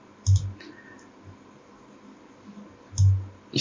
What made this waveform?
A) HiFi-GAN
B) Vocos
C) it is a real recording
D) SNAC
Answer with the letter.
C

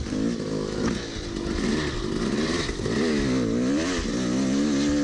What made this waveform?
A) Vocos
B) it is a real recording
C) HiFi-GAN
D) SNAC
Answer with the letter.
B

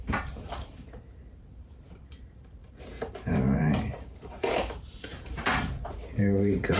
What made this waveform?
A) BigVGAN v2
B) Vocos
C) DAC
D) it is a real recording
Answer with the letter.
A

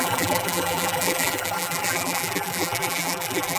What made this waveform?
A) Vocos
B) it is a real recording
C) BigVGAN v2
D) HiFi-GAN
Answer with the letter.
C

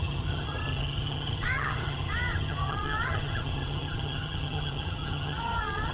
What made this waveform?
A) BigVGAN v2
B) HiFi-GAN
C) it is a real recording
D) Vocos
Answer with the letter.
B